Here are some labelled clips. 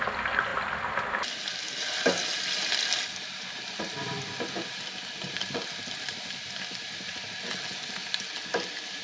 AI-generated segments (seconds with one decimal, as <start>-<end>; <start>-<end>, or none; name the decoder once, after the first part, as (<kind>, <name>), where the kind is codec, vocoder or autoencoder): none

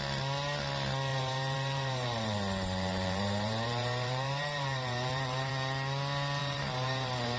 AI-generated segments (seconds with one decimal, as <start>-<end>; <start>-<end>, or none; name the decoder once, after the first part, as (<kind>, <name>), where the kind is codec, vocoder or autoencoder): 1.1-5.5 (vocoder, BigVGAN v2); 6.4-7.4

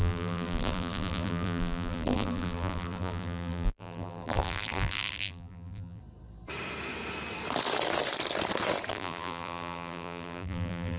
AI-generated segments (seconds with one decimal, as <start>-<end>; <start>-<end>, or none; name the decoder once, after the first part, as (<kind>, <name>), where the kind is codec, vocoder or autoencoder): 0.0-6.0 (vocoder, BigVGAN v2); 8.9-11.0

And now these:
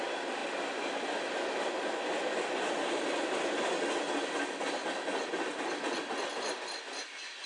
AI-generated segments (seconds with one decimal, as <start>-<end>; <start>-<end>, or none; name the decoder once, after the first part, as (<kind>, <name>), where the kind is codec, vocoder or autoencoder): none

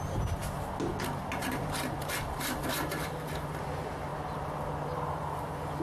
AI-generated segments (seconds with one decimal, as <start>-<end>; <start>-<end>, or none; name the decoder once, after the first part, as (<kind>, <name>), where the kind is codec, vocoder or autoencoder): 1.4-2.7 (vocoder, BigVGAN v2)